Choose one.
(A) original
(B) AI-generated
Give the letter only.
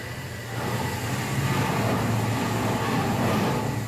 A